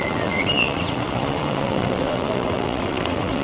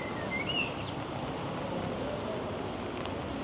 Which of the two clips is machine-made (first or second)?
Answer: first